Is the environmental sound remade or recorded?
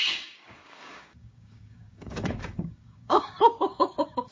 remade